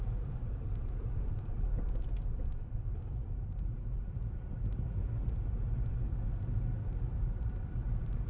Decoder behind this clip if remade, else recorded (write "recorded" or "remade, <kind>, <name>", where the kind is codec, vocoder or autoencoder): recorded